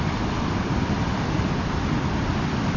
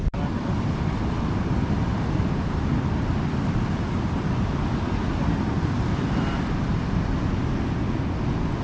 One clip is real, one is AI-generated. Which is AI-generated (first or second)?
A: first